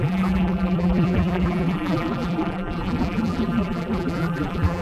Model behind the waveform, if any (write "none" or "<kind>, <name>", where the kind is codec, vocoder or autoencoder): vocoder, BigVGAN v2